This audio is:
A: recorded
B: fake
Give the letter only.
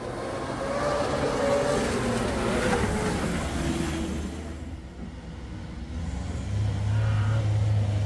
A